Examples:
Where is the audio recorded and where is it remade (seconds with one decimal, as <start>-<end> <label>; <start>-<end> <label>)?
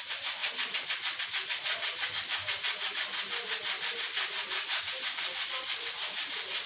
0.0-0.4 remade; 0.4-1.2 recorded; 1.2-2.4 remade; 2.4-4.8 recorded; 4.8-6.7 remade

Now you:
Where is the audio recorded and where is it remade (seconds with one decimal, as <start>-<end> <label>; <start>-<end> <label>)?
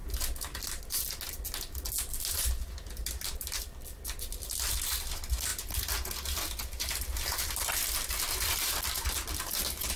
0.0-10.0 recorded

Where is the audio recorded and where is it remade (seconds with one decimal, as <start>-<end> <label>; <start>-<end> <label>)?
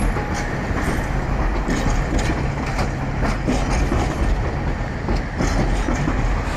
0.0-1.5 recorded; 1.5-2.3 remade; 2.3-6.6 recorded